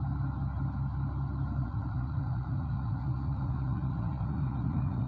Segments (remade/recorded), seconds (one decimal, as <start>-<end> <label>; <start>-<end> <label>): 0.0-1.6 recorded; 1.6-5.1 remade